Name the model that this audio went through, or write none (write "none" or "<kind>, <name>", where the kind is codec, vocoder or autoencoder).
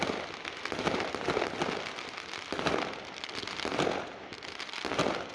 none